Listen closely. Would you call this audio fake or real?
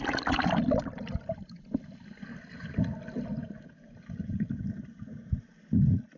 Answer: real